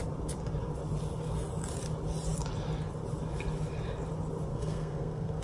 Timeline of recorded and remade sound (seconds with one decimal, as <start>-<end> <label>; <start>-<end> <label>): 0.0-4.5 recorded; 4.5-5.4 remade